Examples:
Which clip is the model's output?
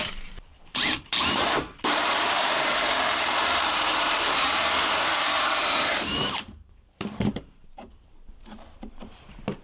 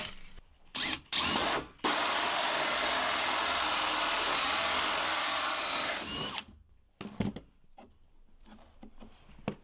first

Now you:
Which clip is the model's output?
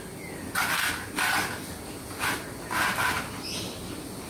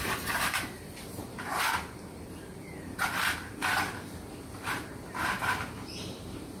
second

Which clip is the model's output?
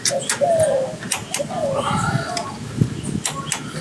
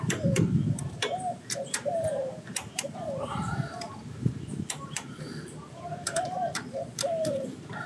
second